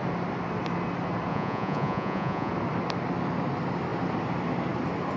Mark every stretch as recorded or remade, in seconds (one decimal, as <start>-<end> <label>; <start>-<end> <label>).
0.0-1.3 recorded; 1.3-2.5 remade; 2.5-5.2 recorded